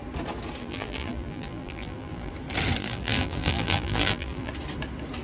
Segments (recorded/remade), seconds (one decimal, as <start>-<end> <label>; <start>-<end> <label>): 0.0-0.6 recorded; 0.6-2.3 remade; 2.3-2.8 recorded; 2.8-4.5 remade; 4.5-5.2 recorded